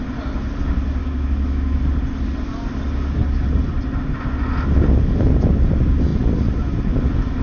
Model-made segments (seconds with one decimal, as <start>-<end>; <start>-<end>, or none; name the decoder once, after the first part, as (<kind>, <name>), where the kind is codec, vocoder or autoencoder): 1.0-1.8 (autoencoder, DAC-VAE)